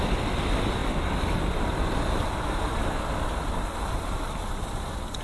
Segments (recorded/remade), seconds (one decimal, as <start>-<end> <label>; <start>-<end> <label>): 0.0-5.2 recorded